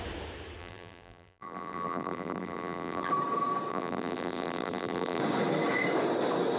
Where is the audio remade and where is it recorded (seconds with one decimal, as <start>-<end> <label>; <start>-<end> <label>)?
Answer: 0.0-0.6 recorded; 0.6-3.1 remade; 3.1-3.7 recorded; 3.7-5.2 remade; 5.2-6.6 recorded